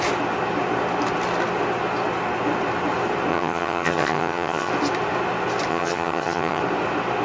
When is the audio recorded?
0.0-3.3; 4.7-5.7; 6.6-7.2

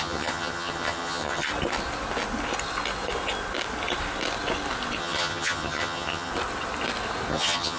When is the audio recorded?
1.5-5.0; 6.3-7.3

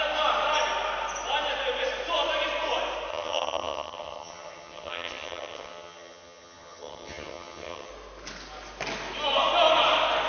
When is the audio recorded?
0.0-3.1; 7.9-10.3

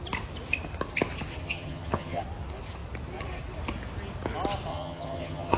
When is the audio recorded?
0.0-1.4; 2.2-4.7